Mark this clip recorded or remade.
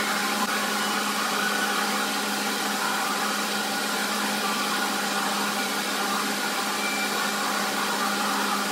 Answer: recorded